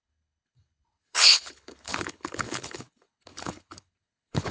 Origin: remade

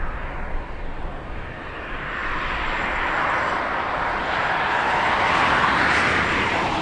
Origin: recorded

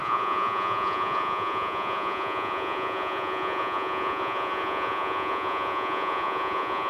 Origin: remade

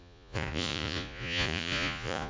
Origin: remade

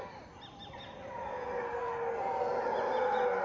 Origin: recorded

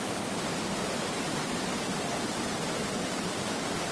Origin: remade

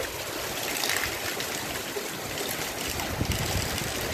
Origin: recorded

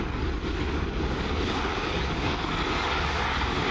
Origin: remade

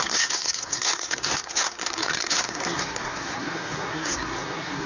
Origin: remade